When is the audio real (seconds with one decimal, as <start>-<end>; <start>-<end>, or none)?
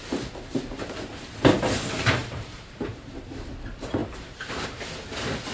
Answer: 0.0-2.2; 3.5-4.0; 4.6-5.5